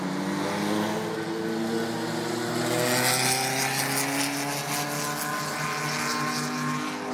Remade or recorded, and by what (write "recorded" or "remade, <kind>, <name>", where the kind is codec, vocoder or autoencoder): recorded